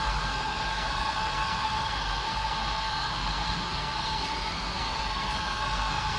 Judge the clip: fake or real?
fake